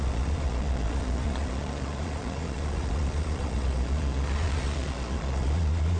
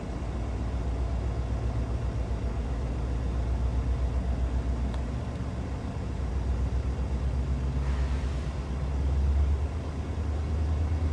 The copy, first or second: first